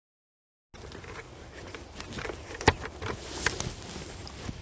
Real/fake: real